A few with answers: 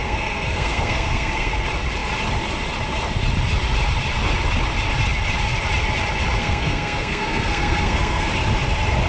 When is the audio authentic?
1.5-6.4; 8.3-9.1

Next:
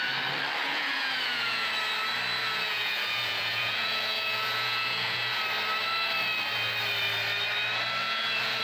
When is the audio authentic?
0.0-0.6; 1.7-2.4; 5.4-8.0

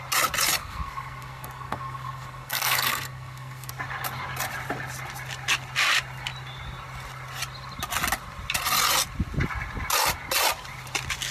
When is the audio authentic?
0.0-0.6; 3.7-11.3

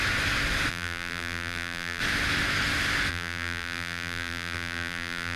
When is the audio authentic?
0.0-0.7; 2.0-3.1

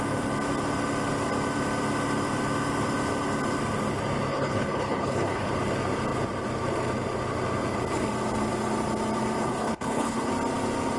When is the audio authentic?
0.0-4.3; 5.5-9.4; 10.3-11.0

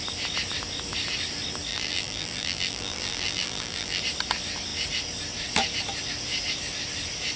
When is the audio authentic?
0.0-1.7; 4.0-7.4